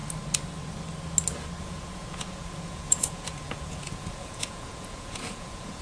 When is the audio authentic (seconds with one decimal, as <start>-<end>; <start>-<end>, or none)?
0.0-1.6